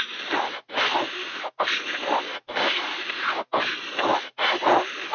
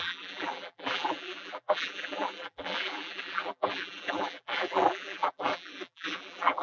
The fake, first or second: second